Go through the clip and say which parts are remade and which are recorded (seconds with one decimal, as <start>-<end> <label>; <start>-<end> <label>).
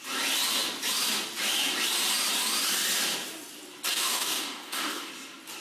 0.0-3.9 recorded; 3.9-5.1 remade; 5.1-5.6 recorded